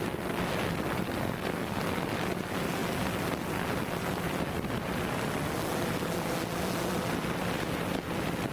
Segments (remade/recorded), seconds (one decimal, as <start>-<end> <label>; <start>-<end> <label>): 0.0-1.2 recorded; 1.2-1.8 remade; 1.8-8.5 recorded